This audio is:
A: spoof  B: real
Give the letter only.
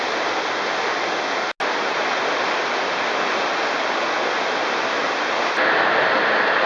B